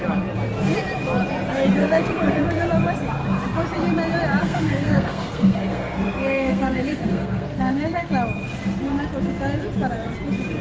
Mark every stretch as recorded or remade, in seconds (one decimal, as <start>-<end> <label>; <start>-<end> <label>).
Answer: 0.0-1.8 recorded; 1.8-2.4 remade; 2.4-4.4 recorded; 4.4-8.1 remade; 8.1-10.6 recorded